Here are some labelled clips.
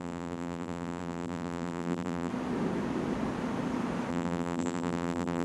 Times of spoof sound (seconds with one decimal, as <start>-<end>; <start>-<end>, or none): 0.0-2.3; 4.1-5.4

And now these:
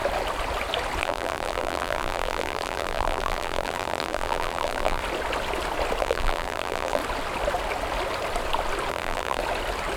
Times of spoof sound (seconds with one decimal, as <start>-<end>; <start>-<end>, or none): 1.0-5.0; 6.0-7.0; 8.9-9.4

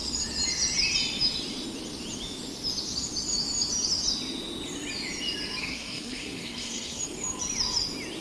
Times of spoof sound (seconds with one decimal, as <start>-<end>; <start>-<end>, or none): 5.6-7.0